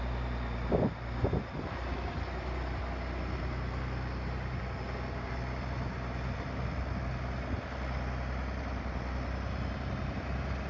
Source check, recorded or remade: recorded